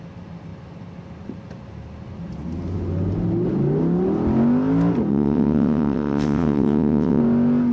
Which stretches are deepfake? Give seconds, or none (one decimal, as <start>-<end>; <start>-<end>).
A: 5.1-7.2